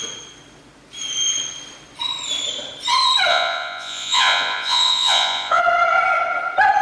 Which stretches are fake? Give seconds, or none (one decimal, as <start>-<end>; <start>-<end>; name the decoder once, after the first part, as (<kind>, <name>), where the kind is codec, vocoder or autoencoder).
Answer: 3.3-5.6 (vocoder, Vocos)